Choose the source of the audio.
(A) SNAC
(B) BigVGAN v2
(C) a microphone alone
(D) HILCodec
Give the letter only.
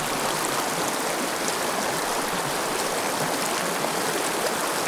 C